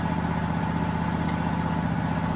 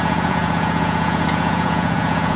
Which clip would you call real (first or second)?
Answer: first